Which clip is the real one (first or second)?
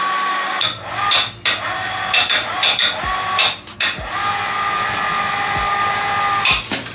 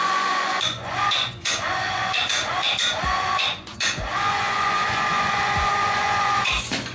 first